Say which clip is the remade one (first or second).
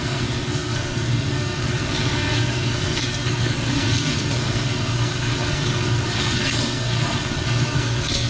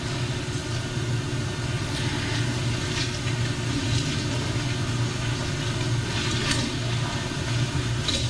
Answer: first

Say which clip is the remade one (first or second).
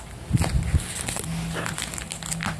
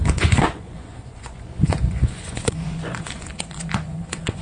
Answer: second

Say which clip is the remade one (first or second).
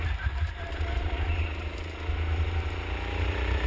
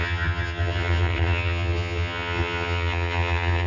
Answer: second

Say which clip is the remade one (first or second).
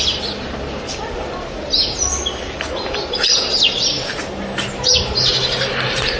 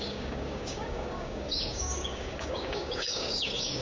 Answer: second